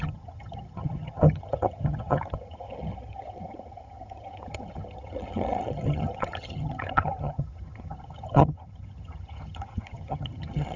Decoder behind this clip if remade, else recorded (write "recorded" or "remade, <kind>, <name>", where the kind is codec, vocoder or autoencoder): remade, vocoder, HiFi-GAN